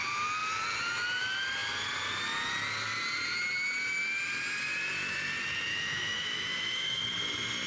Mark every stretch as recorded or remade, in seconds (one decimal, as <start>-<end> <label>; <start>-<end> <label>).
0.0-5.7 recorded; 5.7-7.0 remade; 7.0-7.7 recorded